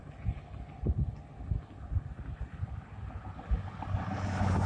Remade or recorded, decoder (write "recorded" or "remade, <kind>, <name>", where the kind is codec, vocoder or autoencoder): recorded